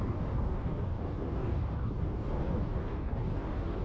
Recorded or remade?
remade